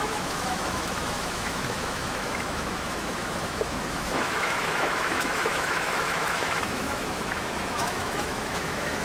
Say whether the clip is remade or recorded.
remade